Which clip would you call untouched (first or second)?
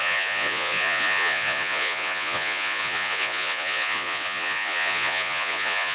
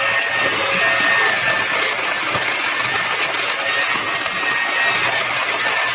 second